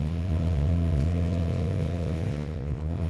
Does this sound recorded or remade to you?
remade